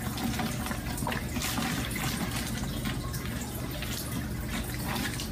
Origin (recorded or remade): recorded